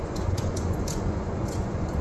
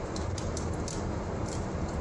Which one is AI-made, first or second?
first